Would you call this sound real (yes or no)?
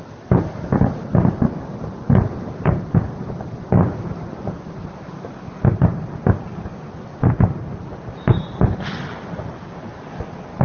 yes